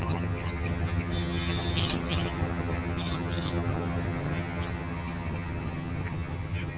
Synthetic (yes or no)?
yes